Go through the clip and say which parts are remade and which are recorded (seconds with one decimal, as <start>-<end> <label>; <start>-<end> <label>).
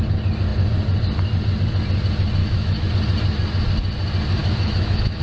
0.0-2.4 recorded; 2.4-2.9 remade; 2.9-4.4 recorded; 4.4-5.2 remade